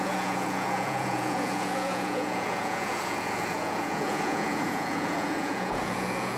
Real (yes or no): no